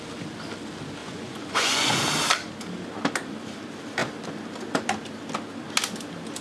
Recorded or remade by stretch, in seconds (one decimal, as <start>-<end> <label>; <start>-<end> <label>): 0.0-1.0 recorded; 1.0-2.0 remade; 2.0-6.4 recorded